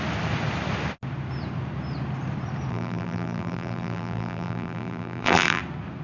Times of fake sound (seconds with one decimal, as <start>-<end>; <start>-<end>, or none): 2.7-5.6